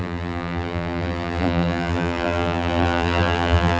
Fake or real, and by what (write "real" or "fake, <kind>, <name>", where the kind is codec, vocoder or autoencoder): fake, vocoder, BigVGAN v2